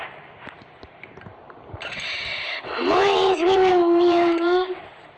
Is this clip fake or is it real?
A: fake